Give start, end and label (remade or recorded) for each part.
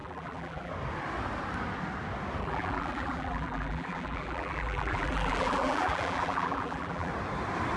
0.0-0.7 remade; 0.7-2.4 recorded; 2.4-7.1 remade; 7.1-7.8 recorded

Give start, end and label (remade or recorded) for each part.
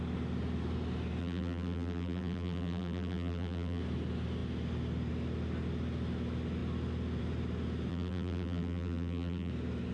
0.0-1.2 recorded; 1.2-3.8 remade; 3.8-7.9 recorded; 7.9-9.5 remade; 9.5-9.9 recorded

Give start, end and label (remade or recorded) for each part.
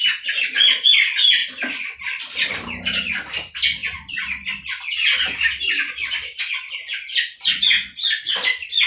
0.0-8.9 recorded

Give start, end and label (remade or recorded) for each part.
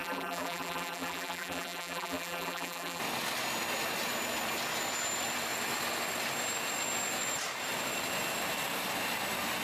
0.0-3.0 remade; 3.0-9.6 recorded